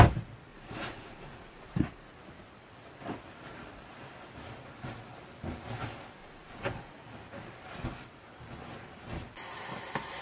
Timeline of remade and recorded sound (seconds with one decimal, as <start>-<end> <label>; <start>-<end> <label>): 0.0-0.5 recorded; 0.5-2.1 remade; 2.1-6.2 recorded; 6.2-6.9 remade; 6.9-10.2 recorded

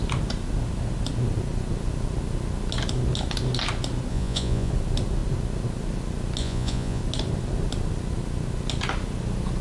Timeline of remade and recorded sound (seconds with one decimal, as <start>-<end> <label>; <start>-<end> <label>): 0.0-4.1 recorded; 4.1-4.7 remade; 4.7-6.4 recorded; 6.4-7.0 remade; 7.0-9.6 recorded

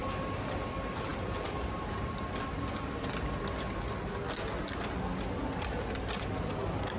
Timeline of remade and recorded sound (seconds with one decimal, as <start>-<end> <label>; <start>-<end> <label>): 0.0-7.0 recorded

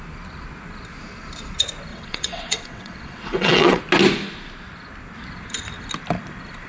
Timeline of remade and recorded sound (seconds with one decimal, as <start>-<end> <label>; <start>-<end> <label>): 0.0-1.9 recorded; 1.9-3.8 remade; 3.8-6.7 recorded

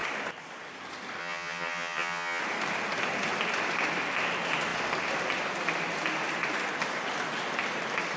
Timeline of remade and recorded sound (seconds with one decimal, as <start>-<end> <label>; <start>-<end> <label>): 0.0-1.2 recorded; 1.2-2.4 remade; 2.4-8.2 recorded

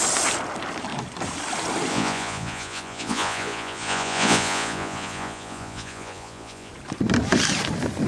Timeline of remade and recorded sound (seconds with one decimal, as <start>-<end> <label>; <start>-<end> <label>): 0.0-1.9 recorded; 1.9-6.7 remade; 6.7-8.1 recorded

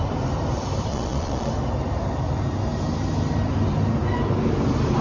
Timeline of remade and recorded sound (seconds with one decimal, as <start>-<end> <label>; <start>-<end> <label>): 0.0-0.9 recorded; 0.9-1.5 remade; 1.5-5.0 recorded

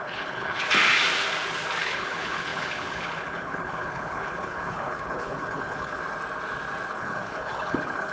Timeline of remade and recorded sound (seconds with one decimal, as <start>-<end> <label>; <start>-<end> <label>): 0.0-0.6 remade; 0.6-1.8 recorded; 1.8-6.0 remade; 6.0-6.9 recorded; 6.9-8.1 remade